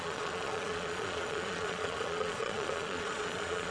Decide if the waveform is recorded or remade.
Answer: remade